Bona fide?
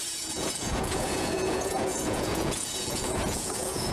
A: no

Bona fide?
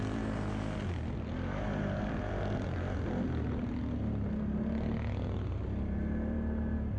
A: yes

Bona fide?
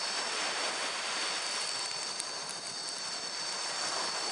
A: yes